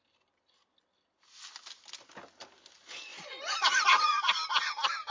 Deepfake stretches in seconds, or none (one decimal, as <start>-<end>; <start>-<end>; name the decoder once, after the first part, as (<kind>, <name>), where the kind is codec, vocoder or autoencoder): 3.1-4.3 (vocoder, Vocos)